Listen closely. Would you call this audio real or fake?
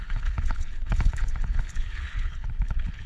fake